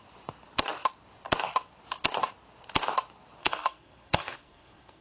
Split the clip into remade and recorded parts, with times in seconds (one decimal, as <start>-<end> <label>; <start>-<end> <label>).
0.0-3.4 recorded; 3.4-5.0 remade

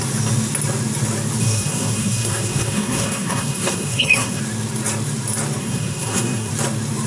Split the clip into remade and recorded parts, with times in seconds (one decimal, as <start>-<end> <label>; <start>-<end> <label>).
0.0-1.4 recorded; 1.4-4.4 remade; 4.4-5.6 recorded; 5.6-6.5 remade; 6.5-7.1 recorded

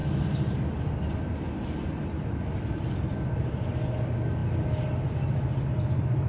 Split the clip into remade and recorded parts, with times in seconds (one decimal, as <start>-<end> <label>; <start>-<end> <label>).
0.0-6.3 recorded

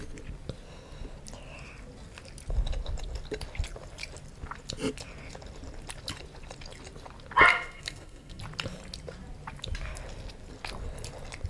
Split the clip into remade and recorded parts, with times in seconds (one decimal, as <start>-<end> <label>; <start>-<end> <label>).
0.0-7.5 recorded; 7.5-8.4 remade; 8.4-11.5 recorded